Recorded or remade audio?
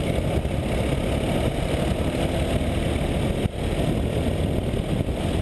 recorded